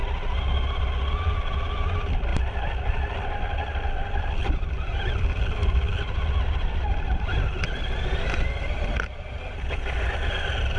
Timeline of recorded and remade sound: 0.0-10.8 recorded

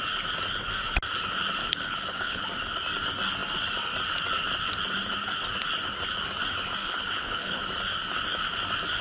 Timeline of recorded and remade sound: 0.0-1.6 recorded; 1.6-2.4 remade; 2.4-6.8 recorded; 6.8-7.6 remade; 7.6-9.0 recorded

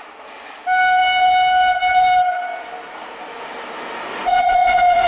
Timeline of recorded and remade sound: 0.0-4.1 recorded; 4.1-5.1 remade

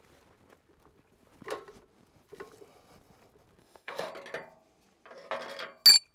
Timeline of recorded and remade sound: 0.0-3.6 recorded; 3.6-4.1 remade; 4.1-6.1 recorded

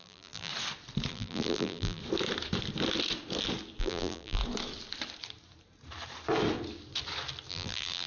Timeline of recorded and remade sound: 0.0-0.5 remade; 0.5-1.1 recorded; 1.1-2.0 remade; 2.0-3.8 recorded; 3.8-4.4 remade; 4.4-7.5 recorded; 7.5-8.1 remade

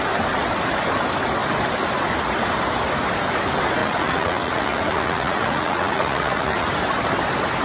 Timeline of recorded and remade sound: 0.0-3.8 recorded; 3.8-6.7 remade; 6.7-7.6 recorded

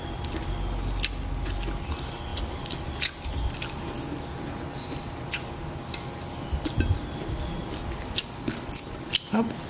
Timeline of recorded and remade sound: 0.0-9.7 recorded